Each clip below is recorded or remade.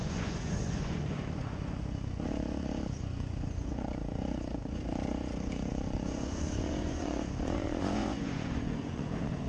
remade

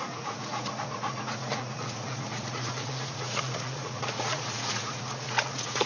remade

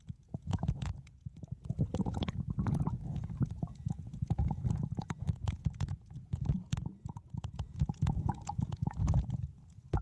remade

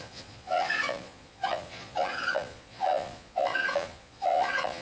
remade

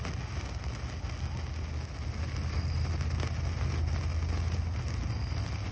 recorded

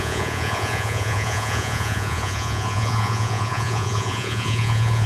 remade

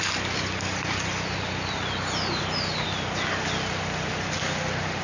recorded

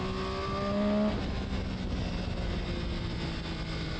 recorded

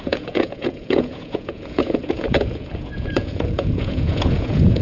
remade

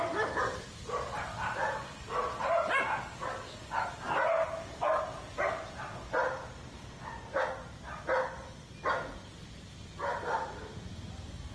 recorded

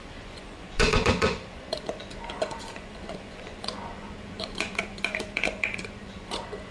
remade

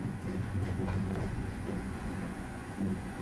remade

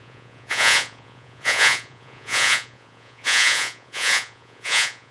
remade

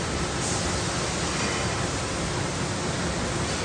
recorded